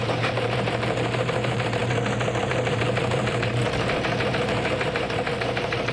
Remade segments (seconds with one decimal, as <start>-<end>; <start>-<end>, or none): 0.0-1.8; 2.4-3.6; 4.3-5.9